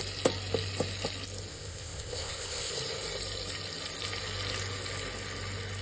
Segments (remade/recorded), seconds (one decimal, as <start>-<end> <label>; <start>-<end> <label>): 0.0-1.5 recorded; 1.5-2.7 remade; 2.7-5.8 recorded